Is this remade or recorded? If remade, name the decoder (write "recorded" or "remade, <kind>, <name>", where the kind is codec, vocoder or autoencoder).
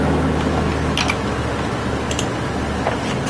recorded